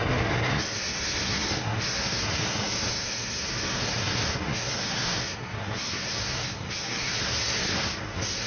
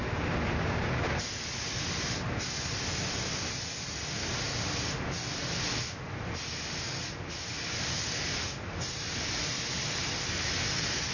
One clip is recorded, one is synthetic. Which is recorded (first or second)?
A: second